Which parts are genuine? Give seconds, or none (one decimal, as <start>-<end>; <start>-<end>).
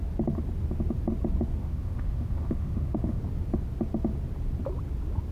0.0-1.6; 3.2-5.3